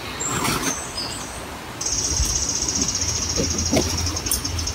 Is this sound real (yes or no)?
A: yes